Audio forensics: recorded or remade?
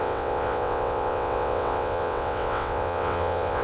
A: remade